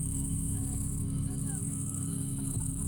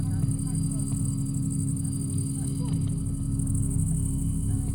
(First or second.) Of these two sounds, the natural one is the second